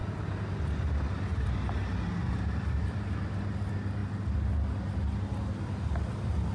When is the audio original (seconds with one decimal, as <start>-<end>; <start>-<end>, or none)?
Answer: 0.5-6.5